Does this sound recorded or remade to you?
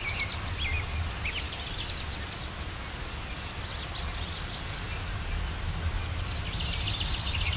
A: recorded